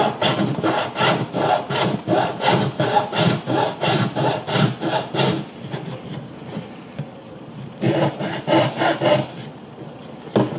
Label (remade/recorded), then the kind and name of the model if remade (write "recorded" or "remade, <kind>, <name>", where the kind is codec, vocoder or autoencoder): recorded